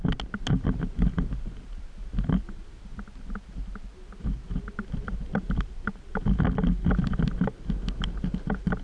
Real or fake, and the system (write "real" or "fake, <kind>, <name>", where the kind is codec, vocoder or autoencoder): real